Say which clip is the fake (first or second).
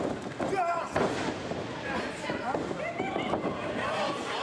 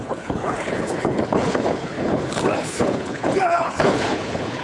second